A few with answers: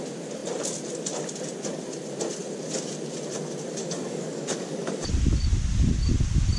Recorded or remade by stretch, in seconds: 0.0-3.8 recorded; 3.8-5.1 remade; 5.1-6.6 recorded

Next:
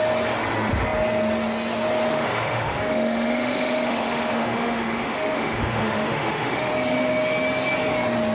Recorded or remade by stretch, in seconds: 0.0-2.1 recorded; 2.1-6.7 remade; 6.7-8.3 recorded

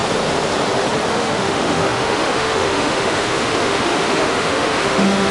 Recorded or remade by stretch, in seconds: 0.0-1.1 recorded; 1.1-5.3 remade

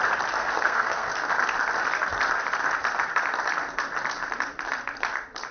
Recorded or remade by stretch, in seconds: 0.0-0.4 recorded; 0.4-1.1 remade; 1.1-5.5 recorded

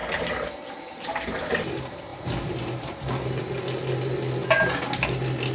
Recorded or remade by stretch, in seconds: 0.0-1.6 remade; 1.6-2.1 recorded; 2.1-3.4 remade; 3.4-5.5 recorded

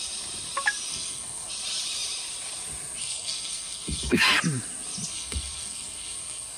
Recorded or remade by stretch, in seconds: 0.0-0.9 recorded; 0.9-1.5 remade; 1.5-3.0 recorded; 3.0-4.4 remade; 4.4-5.1 recorded; 5.1-6.6 remade

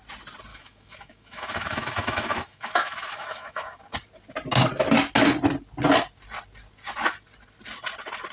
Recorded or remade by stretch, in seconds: 0.0-0.5 recorded; 0.5-3.8 remade; 3.8-8.3 recorded